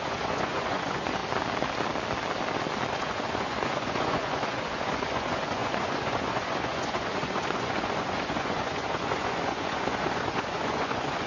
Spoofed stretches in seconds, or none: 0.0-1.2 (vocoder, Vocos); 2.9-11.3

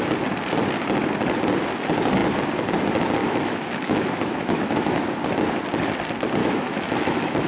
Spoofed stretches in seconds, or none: 3.2-5.0 (autoencoder, DAC-VAE); 6.4-7.5

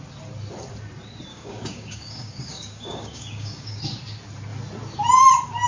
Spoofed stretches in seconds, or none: 1.3-3.8 (codec, DAC)

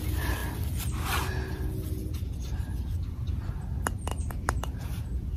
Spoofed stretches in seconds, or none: 4.1-4.8 (vocoder, BigVGAN v2)

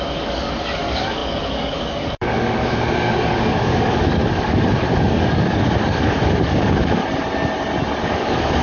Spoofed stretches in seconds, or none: 0.0-7.0 (codec, DAC); 8.0-8.6

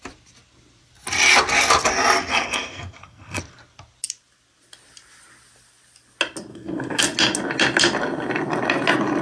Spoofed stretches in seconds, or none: 2.3-3.4 (codec, SNAC); 6.5-7.0

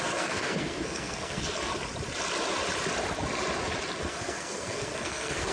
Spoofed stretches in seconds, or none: 0.0-1.7 (codec, SNAC); 4.0-5.5

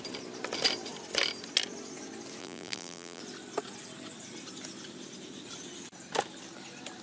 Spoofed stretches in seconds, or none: 2.4-3.2 (vocoder, BigVGAN v2)